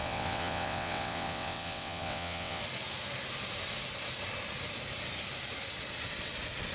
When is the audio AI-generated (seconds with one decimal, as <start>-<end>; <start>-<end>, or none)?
0.0-2.6